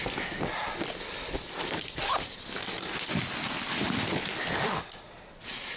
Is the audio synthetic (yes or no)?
no